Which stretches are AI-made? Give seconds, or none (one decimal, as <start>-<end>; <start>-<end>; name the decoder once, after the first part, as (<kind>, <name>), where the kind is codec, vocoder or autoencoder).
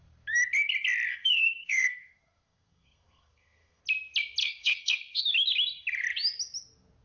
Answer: 1.1-3.8 (codec, SNAC); 4.4-5.2